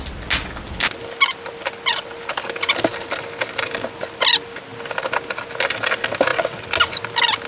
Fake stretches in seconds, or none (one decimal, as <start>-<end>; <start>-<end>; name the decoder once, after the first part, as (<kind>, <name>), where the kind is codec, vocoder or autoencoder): none